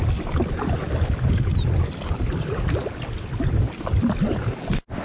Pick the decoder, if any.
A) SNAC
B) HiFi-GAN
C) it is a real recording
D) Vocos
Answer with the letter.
C